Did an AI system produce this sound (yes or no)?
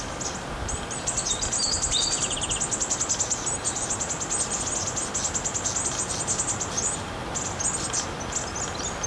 no